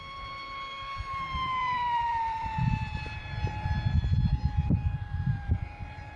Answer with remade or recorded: remade